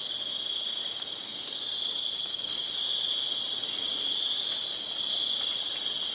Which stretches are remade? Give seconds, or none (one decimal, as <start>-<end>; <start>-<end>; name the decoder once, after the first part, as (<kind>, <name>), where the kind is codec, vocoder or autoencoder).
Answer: none